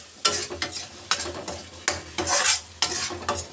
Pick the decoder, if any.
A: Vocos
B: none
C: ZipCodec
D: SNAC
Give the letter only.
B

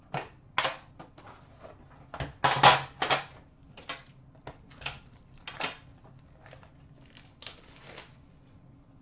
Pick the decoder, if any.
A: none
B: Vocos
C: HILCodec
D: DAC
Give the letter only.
A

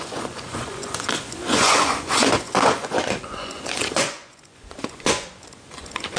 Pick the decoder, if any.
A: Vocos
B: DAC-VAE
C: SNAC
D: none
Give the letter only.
A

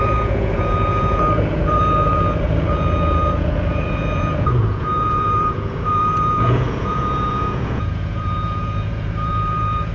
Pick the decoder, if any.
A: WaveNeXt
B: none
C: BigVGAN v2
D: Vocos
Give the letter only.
D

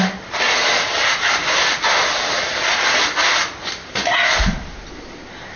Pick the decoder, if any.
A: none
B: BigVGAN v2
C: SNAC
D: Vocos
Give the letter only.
A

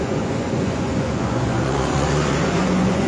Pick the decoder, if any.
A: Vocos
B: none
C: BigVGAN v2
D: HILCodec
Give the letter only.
A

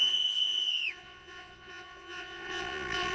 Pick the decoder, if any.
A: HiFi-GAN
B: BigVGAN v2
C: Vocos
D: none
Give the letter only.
C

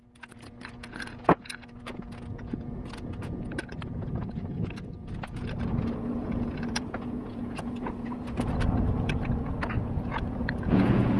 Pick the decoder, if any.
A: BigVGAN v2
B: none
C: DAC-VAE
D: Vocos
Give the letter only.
D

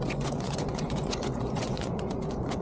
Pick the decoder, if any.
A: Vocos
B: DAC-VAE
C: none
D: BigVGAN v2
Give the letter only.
A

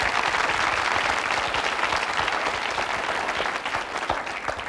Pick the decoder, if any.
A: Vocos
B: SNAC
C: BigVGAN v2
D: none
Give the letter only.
D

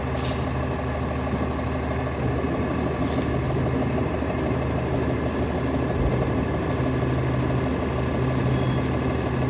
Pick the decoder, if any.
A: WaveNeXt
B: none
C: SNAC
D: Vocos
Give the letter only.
B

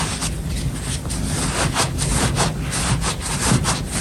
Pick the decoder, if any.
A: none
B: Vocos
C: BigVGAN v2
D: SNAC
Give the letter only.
A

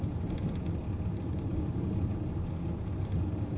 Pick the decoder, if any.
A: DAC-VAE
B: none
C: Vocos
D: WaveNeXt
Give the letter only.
B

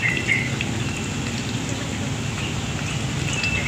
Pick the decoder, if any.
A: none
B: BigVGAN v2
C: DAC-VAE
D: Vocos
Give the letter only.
A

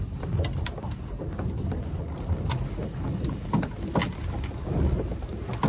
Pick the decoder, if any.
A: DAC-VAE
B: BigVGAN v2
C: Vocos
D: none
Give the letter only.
D